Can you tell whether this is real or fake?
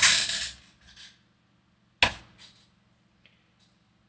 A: real